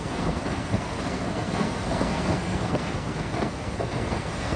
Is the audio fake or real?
fake